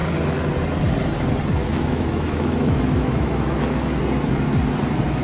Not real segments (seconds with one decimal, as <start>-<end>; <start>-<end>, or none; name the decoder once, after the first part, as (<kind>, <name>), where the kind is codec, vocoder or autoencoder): 1.6-4.0 (autoencoder, DAC-VAE)